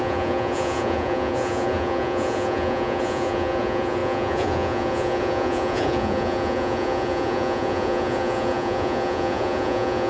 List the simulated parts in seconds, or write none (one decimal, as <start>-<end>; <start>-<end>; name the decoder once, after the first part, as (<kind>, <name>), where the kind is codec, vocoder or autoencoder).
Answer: 0.0-10.1 (vocoder, Vocos)